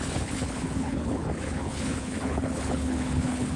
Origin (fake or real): fake